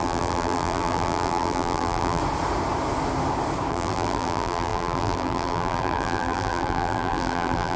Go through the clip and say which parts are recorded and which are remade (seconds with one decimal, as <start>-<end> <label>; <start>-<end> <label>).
0.0-2.2 remade; 2.2-3.7 recorded; 3.7-7.8 remade